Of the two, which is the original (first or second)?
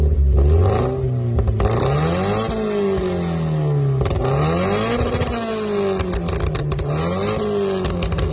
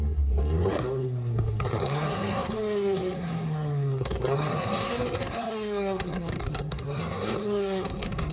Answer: first